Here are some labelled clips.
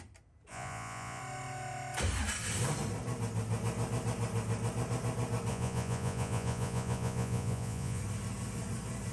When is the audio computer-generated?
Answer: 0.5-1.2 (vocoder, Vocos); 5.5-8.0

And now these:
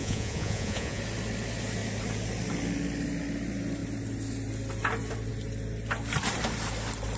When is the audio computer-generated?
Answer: 0.0-1.0 (vocoder, Vocos)

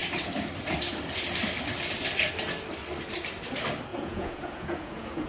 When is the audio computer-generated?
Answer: 3.9-5.3 (vocoder, Vocos)